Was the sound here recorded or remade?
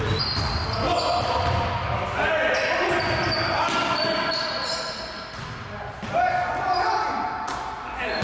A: recorded